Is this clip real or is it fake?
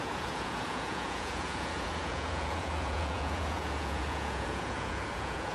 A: fake